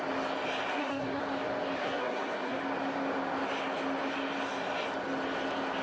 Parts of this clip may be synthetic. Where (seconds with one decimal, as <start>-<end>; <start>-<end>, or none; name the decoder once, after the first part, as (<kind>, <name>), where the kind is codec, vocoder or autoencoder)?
0.7-1.2 (codec, SNAC); 1.8-2.6

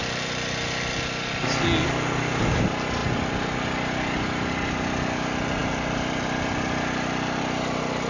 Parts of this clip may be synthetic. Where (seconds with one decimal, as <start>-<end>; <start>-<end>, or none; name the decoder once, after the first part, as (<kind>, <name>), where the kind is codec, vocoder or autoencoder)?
none

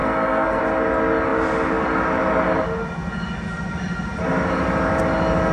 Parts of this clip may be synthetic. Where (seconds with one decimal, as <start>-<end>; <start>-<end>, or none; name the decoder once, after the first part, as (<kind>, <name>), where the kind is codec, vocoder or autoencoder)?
0.0-0.6 (codec, SNAC)

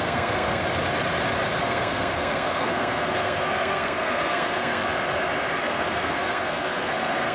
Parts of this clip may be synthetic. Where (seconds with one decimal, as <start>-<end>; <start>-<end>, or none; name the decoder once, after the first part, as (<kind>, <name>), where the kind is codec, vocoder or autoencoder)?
0.0-0.6 (codec, SNAC); 1.6-4.8; 5.6-7.3

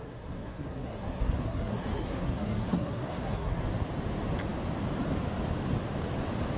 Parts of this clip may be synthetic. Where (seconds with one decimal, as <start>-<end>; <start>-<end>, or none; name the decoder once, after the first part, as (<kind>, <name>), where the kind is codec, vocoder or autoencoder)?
0.0-3.6 (codec, SNAC)

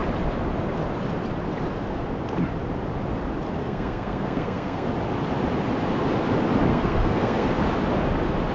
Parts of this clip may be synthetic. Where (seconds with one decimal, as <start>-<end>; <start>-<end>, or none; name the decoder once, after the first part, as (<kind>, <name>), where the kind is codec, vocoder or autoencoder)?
3.6-4.9 (codec, SNAC); 6.7-7.6

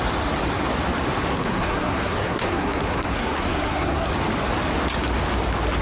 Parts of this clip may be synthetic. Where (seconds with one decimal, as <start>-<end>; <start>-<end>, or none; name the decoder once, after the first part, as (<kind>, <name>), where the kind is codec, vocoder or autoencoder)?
1.3-4.1 (codec, SNAC)

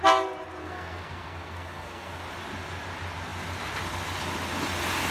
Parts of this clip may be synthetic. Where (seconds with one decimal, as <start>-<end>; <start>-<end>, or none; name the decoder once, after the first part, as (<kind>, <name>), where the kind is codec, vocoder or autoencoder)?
0.6-2.2 (codec, SNAC)